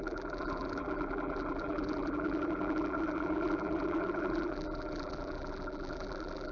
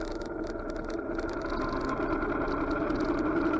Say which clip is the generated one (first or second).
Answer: first